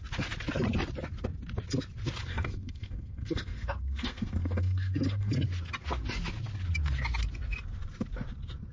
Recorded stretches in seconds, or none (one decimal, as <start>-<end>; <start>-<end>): 0.0-2.3; 5.3-8.7